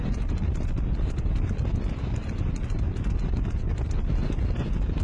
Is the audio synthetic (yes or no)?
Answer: no